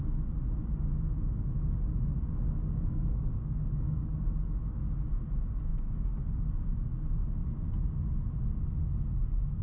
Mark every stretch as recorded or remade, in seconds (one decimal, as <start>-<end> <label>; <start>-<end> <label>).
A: 0.0-2.1 recorded; 2.1-4.2 remade; 4.2-5.7 recorded; 5.7-6.2 remade; 6.2-9.6 recorded

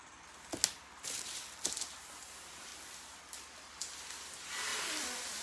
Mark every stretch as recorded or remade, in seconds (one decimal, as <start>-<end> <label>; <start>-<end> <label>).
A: 0.0-2.0 recorded; 2.0-2.7 remade; 2.7-4.3 recorded; 4.3-4.7 remade; 4.7-5.4 recorded

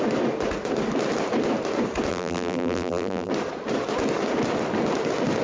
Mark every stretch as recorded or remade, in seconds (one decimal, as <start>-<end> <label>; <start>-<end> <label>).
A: 0.0-2.1 recorded; 2.1-3.3 remade; 3.3-5.4 recorded

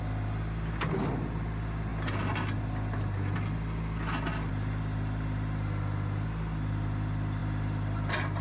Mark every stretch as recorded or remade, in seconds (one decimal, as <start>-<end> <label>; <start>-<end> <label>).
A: 0.0-8.4 recorded

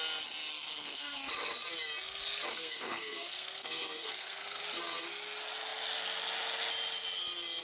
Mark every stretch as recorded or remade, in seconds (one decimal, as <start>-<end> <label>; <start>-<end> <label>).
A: 0.0-0.5 recorded; 0.5-1.3 remade; 1.3-2.5 recorded; 2.5-4.6 remade; 4.6-7.6 recorded

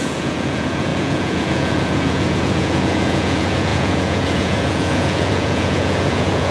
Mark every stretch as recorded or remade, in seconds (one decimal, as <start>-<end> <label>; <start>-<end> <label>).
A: 0.0-6.5 remade

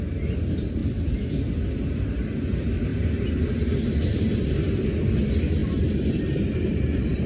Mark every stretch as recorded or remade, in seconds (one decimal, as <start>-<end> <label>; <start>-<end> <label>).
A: 0.0-0.8 recorded; 0.8-1.4 remade; 1.4-7.3 recorded

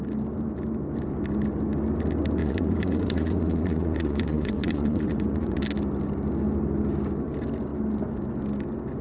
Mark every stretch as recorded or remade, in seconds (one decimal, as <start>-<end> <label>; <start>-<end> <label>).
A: 0.0-2.4 recorded; 2.4-5.6 remade; 5.6-9.0 recorded